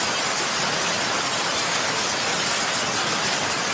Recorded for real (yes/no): yes